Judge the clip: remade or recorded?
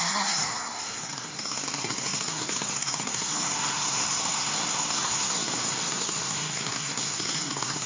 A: remade